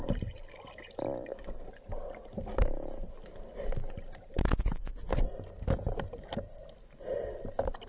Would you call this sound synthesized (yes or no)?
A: no